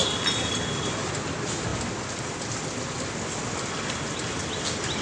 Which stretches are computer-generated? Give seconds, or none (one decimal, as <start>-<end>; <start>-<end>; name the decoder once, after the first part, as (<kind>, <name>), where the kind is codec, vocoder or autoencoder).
none